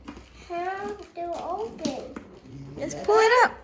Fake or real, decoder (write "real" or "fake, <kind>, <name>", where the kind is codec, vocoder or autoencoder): real